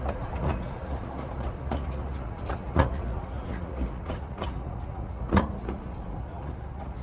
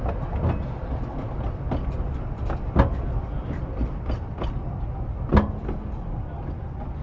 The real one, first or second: second